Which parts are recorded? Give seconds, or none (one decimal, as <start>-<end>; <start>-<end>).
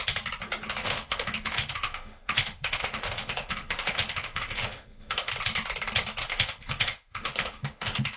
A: 0.0-0.8; 5.3-6.2